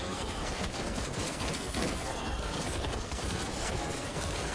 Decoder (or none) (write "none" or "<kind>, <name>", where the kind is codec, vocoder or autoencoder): codec, SNAC